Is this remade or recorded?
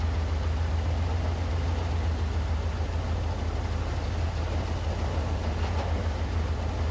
recorded